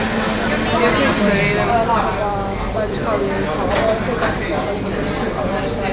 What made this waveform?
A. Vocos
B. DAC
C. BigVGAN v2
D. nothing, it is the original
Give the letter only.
D